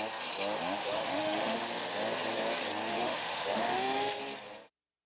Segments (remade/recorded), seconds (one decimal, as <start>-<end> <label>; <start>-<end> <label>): 0.0-0.8 recorded; 0.8-1.6 remade; 1.6-2.9 recorded; 2.9-4.2 remade; 4.2-5.1 recorded